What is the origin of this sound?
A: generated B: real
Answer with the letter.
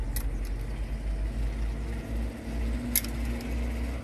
B